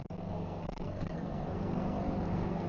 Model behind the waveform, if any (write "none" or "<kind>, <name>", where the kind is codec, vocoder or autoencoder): codec, SNAC